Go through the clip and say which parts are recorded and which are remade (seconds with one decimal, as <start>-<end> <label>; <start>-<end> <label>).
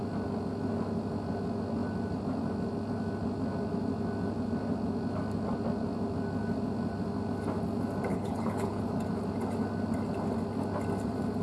0.0-8.1 recorded; 8.1-8.8 remade; 8.8-11.4 recorded